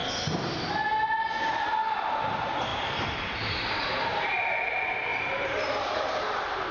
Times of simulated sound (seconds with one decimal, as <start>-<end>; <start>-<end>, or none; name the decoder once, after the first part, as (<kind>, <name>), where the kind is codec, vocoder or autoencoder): 2.7-4.4 (vocoder, BigVGAN v2); 5.1-5.9